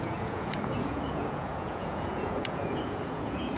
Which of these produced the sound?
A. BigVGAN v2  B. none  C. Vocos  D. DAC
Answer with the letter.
C